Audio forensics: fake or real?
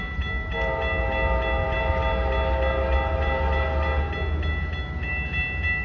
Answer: real